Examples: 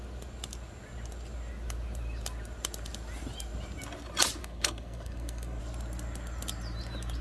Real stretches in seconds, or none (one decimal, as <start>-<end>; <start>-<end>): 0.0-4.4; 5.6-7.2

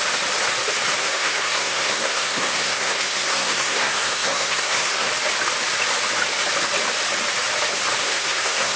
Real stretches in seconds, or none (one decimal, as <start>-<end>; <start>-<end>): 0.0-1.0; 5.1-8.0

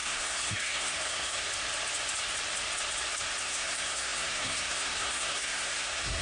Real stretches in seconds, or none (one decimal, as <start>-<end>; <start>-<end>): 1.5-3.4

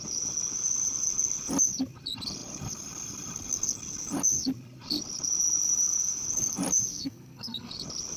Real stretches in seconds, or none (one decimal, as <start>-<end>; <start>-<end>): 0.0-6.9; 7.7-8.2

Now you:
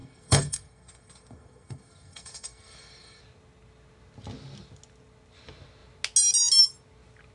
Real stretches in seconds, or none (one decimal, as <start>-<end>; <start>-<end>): 3.2-7.3

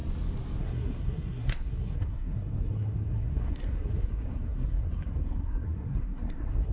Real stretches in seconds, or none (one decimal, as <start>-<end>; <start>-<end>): 0.0-0.6